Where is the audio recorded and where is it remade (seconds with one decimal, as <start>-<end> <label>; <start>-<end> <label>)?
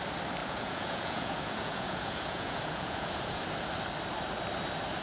0.0-0.4 recorded; 0.4-3.4 remade; 3.4-5.0 recorded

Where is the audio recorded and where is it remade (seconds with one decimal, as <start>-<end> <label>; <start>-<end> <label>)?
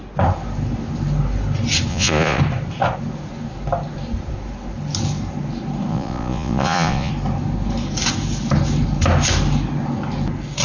0.0-1.9 recorded; 1.9-2.4 remade; 2.4-5.9 recorded; 5.9-7.1 remade; 7.1-10.6 recorded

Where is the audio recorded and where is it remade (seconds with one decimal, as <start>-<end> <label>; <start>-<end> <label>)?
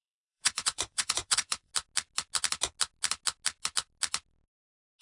0.0-1.7 remade; 1.7-5.0 recorded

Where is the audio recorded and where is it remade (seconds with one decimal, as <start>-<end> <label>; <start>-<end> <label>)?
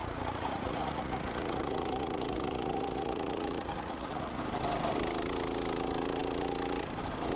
0.0-4.4 remade; 4.4-7.4 recorded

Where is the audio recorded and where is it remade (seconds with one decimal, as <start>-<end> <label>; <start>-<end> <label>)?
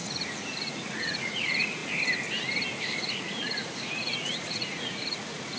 0.0-1.8 remade; 1.8-3.0 recorded; 3.0-5.6 remade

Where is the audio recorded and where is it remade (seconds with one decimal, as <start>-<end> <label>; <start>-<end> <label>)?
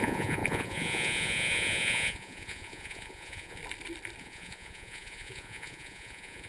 0.0-3.6 remade; 3.6-4.2 recorded; 4.2-6.5 remade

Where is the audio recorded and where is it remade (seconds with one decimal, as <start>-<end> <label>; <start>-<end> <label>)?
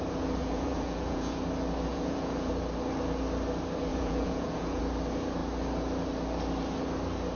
0.0-0.4 recorded; 0.4-1.4 remade; 1.4-1.9 recorded; 1.9-2.5 remade; 2.5-3.9 recorded; 3.9-4.8 remade; 4.8-7.4 recorded